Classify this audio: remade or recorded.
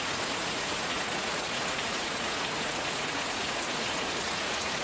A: remade